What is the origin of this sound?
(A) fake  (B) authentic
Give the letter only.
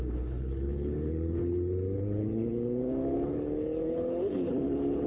A